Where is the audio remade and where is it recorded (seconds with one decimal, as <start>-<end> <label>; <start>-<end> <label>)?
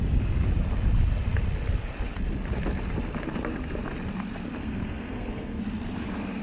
0.0-4.6 recorded; 4.6-5.6 remade; 5.6-6.4 recorded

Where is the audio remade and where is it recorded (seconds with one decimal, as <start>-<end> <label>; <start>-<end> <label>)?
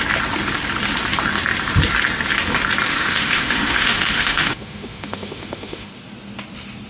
0.0-2.9 recorded; 2.9-5.9 remade; 5.9-6.9 recorded